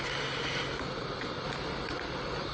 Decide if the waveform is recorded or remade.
recorded